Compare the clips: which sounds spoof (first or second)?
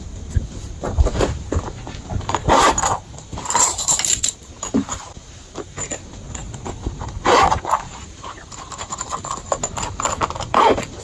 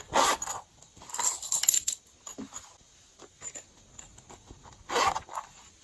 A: first